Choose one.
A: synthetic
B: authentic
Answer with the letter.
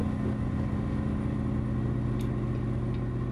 B